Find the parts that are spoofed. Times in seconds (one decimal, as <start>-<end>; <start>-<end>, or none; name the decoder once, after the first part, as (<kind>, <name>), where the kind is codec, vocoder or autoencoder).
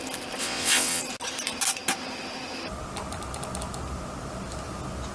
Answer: 0.4-1.0 (vocoder, WaveNeXt)